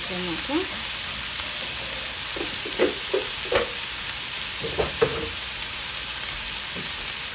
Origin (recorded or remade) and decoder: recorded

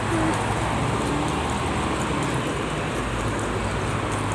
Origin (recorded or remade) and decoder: recorded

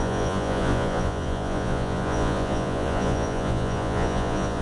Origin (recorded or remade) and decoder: remade, vocoder, Vocos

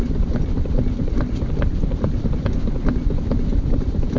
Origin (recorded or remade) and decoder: recorded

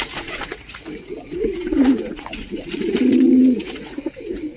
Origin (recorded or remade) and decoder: remade, vocoder, Vocos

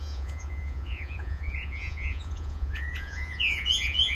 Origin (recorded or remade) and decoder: remade, vocoder, Vocos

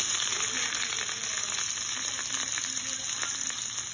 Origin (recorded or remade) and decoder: recorded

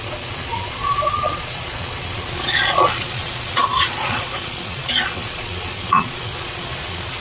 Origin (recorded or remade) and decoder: remade, vocoder, Vocos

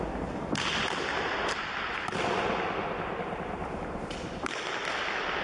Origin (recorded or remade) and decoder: recorded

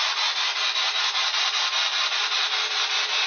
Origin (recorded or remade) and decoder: recorded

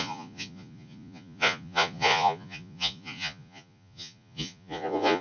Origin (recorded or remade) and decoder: remade, vocoder, Vocos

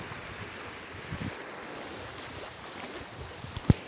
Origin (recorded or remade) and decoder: recorded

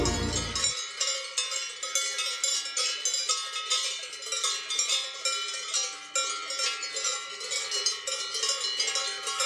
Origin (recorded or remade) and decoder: recorded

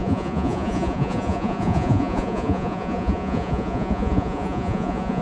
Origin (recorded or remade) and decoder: remade, vocoder, Vocos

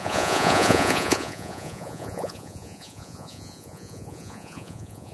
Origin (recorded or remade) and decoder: remade, vocoder, Vocos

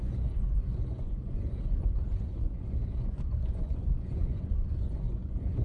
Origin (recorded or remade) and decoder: remade, vocoder, Vocos